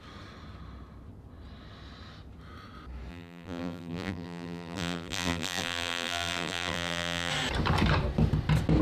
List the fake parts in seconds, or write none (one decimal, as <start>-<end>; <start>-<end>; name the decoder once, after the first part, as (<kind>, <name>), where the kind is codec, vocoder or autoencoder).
3.1-7.3 (vocoder, BigVGAN v2)